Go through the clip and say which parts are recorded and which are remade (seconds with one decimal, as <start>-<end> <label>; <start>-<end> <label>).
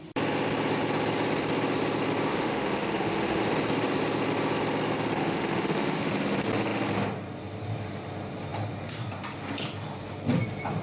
0.0-2.3 recorded; 2.3-3.4 remade; 3.4-5.2 recorded; 5.2-6.1 remade; 6.1-10.8 recorded